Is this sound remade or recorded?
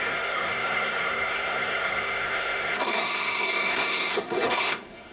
remade